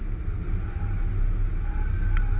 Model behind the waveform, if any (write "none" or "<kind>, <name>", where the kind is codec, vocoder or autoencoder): none